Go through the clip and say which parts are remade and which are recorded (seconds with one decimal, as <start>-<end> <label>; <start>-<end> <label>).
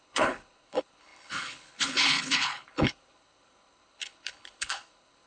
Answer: 0.0-5.3 remade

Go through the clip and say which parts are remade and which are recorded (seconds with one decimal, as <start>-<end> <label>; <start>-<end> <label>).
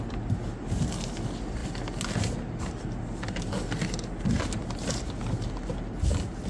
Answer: 0.0-6.5 recorded